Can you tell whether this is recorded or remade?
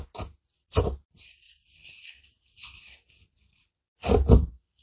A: recorded